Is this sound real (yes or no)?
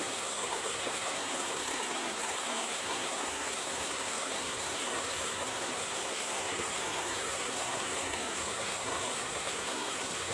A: no